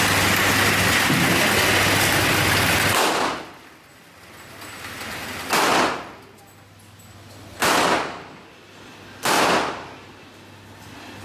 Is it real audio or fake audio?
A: real